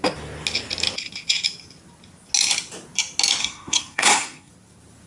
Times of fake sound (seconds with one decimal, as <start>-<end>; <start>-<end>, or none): 3.4-4.5